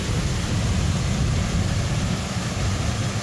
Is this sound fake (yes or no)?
no